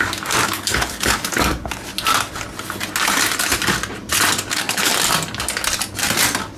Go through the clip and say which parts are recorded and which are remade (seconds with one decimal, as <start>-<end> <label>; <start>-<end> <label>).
0.0-1.9 remade; 1.9-4.5 recorded; 4.5-4.9 remade; 4.9-6.6 recorded

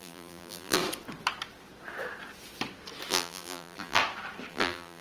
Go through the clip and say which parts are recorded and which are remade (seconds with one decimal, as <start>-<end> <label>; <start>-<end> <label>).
0.0-0.8 remade; 0.8-3.1 recorded; 3.1-4.0 remade; 4.0-4.5 recorded; 4.5-5.0 remade

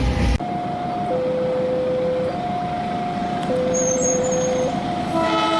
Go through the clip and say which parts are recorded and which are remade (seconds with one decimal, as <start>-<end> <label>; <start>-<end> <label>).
0.0-3.2 recorded; 3.2-4.2 remade; 4.2-5.6 recorded

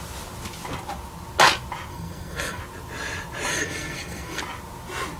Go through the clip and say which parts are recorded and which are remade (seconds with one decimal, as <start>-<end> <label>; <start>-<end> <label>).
0.0-1.9 recorded; 1.9-2.6 remade; 2.6-3.5 recorded; 3.5-4.4 remade; 4.4-5.2 recorded

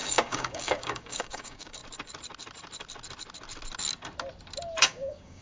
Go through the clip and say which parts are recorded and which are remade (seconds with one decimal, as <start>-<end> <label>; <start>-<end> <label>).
0.0-1.8 remade; 1.8-4.8 recorded; 4.8-5.4 remade